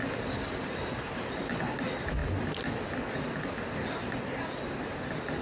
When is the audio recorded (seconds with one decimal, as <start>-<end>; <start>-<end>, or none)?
0.0-5.4